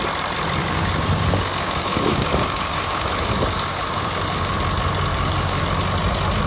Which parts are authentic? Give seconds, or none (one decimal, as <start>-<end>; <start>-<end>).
0.0-0.6; 4.5-5.1; 5.7-6.5